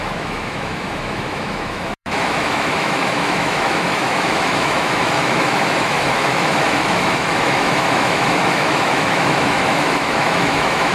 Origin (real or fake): fake